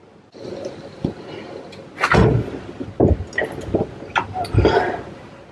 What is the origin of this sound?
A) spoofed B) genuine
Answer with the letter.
B